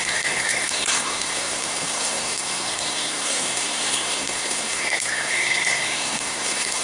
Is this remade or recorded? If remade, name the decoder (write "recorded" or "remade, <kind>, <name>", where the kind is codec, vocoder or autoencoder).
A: remade, codec, SNAC